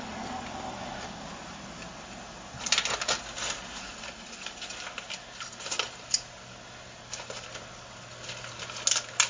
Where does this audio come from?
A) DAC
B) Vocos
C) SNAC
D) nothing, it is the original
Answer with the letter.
D